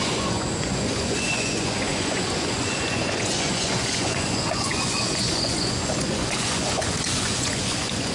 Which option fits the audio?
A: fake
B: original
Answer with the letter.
A